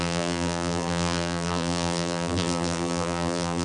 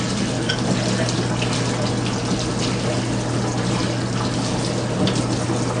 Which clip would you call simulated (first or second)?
first